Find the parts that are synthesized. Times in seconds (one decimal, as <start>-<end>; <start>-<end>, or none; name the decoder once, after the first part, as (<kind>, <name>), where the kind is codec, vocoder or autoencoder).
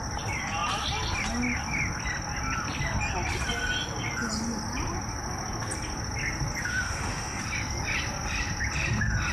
6.7-7.4 (autoencoder, DAC-VAE)